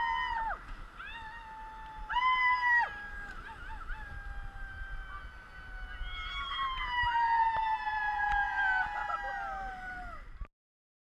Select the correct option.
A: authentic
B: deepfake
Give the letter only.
A